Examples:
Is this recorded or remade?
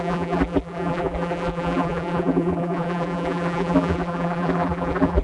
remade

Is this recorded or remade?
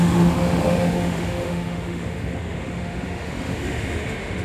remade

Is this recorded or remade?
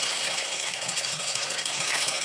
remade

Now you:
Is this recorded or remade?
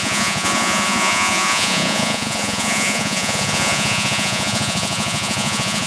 remade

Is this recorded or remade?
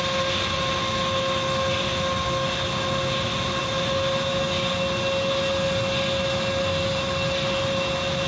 recorded